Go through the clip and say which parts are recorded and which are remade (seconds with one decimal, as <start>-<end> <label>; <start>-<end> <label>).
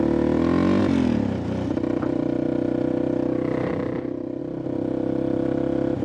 0.0-6.0 recorded